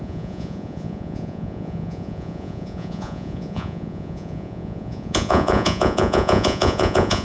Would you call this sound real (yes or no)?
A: no